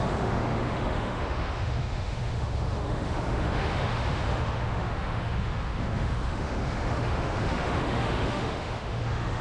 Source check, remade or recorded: remade